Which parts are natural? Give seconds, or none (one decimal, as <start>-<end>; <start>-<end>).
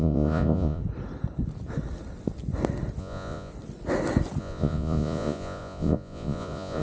0.8-3.0; 3.5-4.4